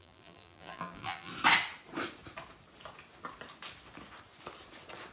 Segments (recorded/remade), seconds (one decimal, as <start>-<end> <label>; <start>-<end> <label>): 0.0-1.3 remade; 1.3-5.1 recorded